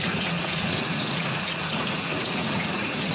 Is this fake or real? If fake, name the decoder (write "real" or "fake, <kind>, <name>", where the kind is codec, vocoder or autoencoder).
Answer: fake, vocoder, Vocos